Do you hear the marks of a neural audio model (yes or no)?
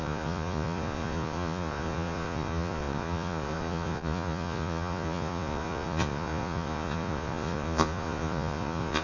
yes